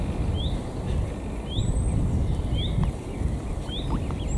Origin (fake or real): real